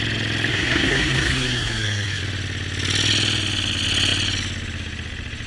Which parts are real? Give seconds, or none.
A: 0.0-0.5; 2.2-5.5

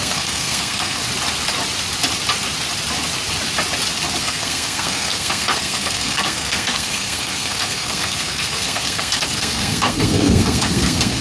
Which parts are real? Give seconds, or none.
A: 1.0-4.2